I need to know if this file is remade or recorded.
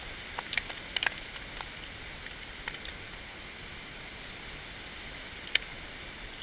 recorded